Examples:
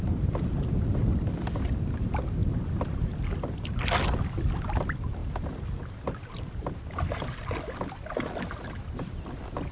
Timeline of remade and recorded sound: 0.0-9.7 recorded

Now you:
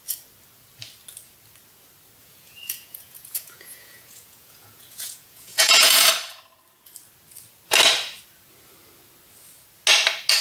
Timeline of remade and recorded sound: 0.0-2.2 recorded; 2.2-6.1 remade; 6.1-10.4 recorded